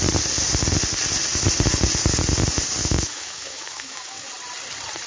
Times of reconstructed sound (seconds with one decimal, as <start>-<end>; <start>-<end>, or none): 2.8-4.3